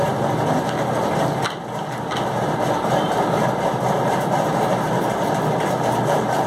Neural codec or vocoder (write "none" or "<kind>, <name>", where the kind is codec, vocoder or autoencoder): none